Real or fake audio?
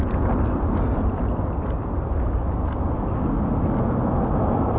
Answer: real